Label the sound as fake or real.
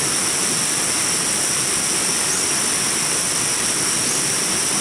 real